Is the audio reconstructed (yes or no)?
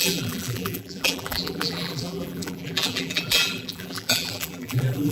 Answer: yes